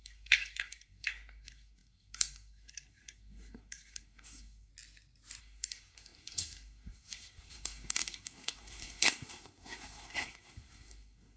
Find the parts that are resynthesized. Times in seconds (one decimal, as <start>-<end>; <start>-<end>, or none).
0.0-4.7; 5.4-11.4